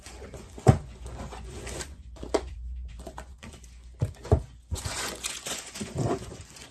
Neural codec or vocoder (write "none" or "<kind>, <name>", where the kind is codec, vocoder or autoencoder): vocoder, Vocos